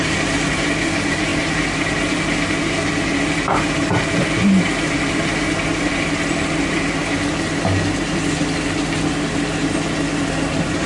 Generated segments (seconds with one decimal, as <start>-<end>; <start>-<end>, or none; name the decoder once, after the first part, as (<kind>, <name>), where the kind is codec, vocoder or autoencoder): 0.0-7.0 (vocoder, BigVGAN v2); 10.4-10.9